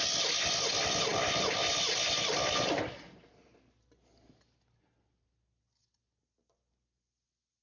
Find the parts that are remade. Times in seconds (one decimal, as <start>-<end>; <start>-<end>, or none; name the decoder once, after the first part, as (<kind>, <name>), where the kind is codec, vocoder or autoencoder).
none